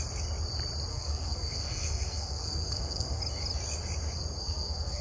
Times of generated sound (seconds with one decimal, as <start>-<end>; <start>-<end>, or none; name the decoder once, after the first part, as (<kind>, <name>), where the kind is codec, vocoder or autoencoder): 0.9-3.2 (codec, SNAC); 4.4-5.0